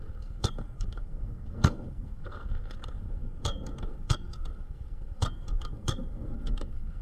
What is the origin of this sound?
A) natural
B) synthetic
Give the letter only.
B